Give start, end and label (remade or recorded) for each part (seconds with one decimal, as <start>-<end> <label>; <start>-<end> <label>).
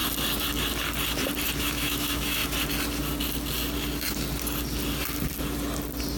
0.0-1.6 recorded; 1.6-2.4 remade; 2.4-6.2 recorded